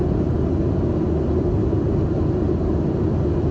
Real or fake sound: real